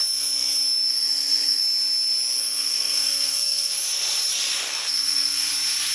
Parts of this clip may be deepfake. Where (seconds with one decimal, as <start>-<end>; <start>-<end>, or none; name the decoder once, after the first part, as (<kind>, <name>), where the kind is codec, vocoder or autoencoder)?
0.9-1.6 (codec, SNAC); 2.4-3.7; 4.7-5.5